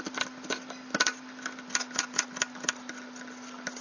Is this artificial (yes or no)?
no